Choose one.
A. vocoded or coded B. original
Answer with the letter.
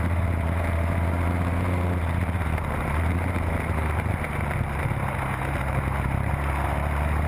A